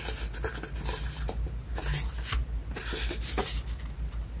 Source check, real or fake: real